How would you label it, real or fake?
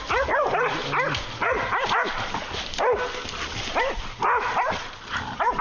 real